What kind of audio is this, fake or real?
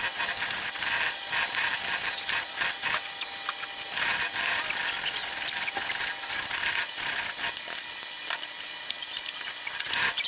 real